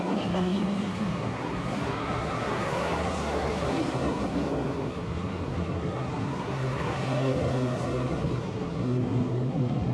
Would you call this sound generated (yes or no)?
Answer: yes